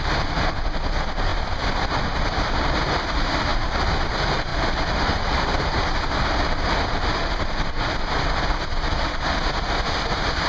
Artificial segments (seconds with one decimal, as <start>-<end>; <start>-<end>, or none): none

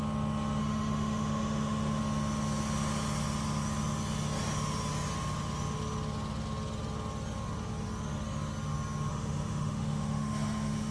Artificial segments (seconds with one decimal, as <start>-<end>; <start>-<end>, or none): 0.6-2.0; 9.1-10.9

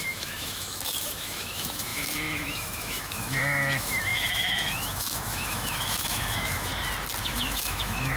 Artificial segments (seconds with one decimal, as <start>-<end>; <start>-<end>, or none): 0.0-6.7; 7.2-8.2

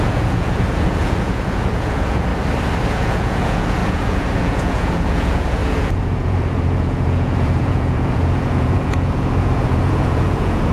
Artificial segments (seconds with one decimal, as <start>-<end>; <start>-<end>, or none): 0.0-2.3; 2.9-10.7

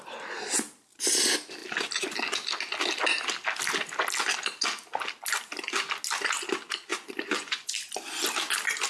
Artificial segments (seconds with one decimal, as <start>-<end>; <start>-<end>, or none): 6.9-7.7

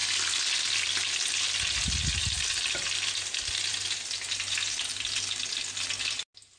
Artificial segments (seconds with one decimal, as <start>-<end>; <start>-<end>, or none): none

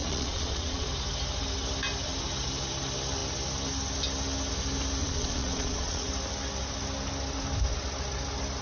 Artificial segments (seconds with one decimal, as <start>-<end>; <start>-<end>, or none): 0.0-0.9; 5.0-6.1

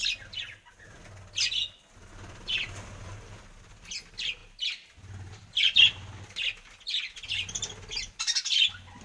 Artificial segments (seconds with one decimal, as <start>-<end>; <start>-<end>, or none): none